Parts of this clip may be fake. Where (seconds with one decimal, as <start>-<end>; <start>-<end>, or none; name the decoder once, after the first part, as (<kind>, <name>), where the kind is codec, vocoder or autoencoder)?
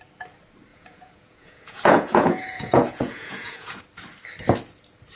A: 0.7-3.8 (vocoder, Vocos)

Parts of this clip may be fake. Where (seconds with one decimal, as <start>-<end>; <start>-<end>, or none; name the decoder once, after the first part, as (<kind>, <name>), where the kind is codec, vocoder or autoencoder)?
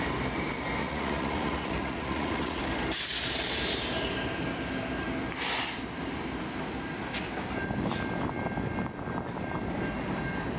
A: 0.8-2.6 (vocoder, Vocos)